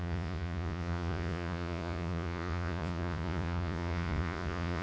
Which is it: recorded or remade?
remade